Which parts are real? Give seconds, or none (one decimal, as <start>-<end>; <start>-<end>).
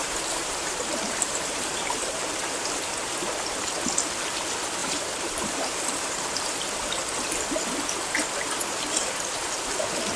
2.3-4.8; 6.9-10.2